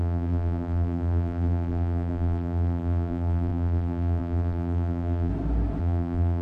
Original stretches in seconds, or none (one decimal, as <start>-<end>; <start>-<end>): 5.3-5.8